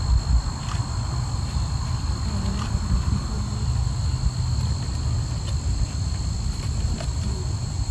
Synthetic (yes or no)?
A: no